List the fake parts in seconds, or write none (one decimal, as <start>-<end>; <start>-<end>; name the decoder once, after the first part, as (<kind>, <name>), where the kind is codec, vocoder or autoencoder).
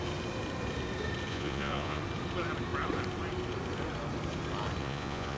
1.3-2.0 (vocoder, Vocos); 4.8-5.4